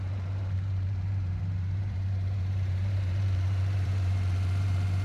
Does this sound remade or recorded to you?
remade